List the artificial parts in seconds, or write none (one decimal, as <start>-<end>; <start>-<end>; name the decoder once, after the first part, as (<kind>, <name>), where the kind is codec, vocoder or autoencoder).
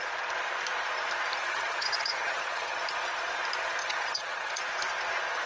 1.4-2.8 (vocoder, HiFi-GAN); 3.8-4.5